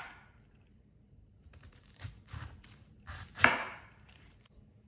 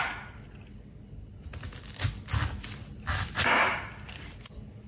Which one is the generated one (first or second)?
first